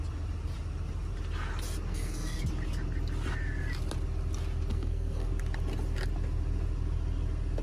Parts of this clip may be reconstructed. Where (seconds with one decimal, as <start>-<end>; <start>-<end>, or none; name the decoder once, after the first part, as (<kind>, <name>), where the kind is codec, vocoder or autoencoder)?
1.9-2.4 (codec, SNAC); 4.7-5.3